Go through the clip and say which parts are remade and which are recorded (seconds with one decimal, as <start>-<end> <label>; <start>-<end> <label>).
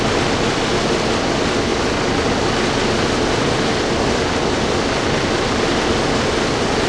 0.0-6.9 recorded